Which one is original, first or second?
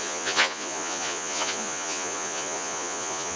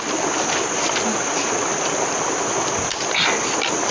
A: second